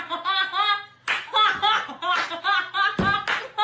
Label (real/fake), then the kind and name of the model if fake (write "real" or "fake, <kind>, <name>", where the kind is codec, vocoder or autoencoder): real